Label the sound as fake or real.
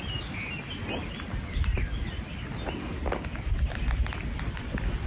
real